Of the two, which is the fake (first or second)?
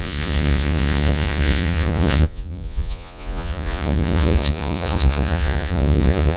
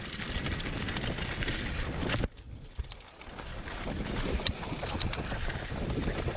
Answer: first